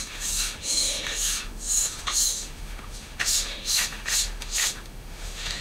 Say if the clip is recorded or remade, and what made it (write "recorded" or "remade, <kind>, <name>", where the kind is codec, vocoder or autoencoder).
remade, autoencoder, DAC-VAE